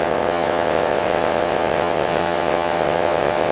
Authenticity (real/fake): fake